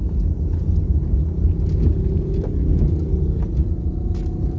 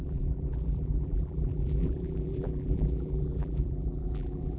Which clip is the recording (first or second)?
first